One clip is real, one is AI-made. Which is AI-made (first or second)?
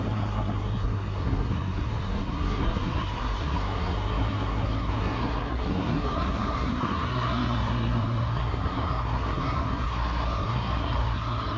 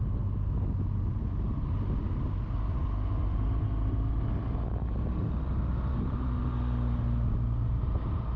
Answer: first